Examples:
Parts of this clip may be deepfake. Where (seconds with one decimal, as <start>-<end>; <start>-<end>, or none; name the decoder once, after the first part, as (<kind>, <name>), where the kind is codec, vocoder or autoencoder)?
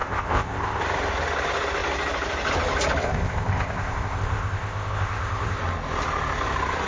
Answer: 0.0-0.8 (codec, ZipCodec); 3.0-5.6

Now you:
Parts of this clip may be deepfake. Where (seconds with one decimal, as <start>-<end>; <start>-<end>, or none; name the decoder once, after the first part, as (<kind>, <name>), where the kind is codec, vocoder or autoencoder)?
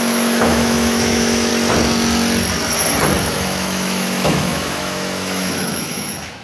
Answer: 0.0-1.5 (autoencoder, DAC-VAE); 3.2-6.4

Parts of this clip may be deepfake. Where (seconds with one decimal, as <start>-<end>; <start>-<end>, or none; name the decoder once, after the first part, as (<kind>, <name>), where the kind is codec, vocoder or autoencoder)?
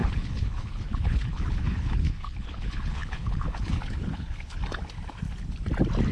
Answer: 0.0-4.6 (codec, HILCodec)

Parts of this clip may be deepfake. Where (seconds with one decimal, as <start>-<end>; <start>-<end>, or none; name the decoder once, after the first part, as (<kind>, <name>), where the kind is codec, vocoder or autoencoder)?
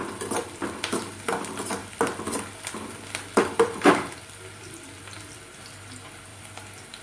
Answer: 1.8-5.4 (vocoder, BigVGAN v2); 6.3-7.0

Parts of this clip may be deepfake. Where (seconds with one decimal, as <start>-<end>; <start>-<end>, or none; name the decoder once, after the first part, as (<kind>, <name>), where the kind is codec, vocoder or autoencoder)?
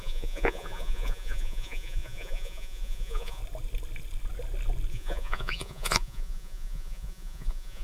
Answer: 0.0-3.4 (vocoder, Vocos); 4.9-7.8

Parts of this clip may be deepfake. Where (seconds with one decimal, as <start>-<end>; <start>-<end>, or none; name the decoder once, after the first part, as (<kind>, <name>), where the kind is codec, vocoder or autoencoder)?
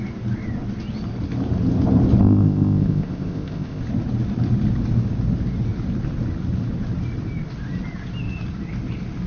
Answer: 2.2-3.8 (codec, ZipCodec)